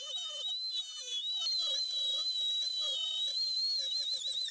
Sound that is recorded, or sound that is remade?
recorded